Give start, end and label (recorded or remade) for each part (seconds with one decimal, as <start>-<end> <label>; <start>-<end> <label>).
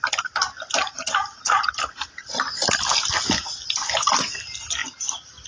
0.0-5.5 recorded